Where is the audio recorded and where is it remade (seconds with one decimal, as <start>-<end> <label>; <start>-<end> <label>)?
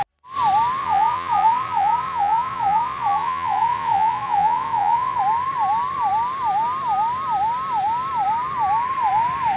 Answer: 0.0-0.8 recorded; 0.8-5.2 remade; 5.2-9.6 recorded